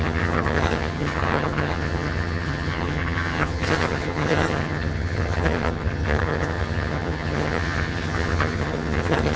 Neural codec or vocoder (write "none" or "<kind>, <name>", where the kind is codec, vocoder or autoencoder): vocoder, HiFi-GAN